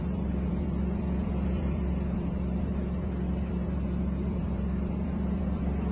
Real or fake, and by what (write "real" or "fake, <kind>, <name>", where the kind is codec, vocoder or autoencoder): fake, vocoder, BigVGAN v2